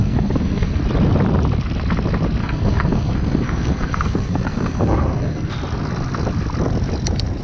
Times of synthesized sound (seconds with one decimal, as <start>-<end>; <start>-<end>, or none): 0.0-0.8; 2.4-5.5